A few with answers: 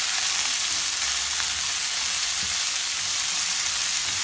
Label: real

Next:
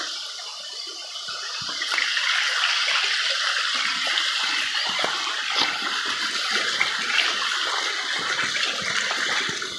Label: real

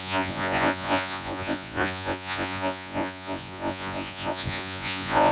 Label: fake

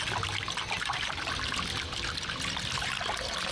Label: real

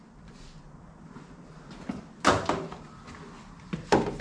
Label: real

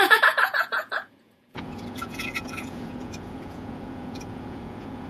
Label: fake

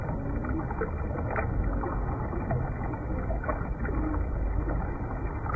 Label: real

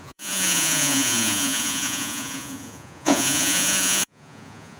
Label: fake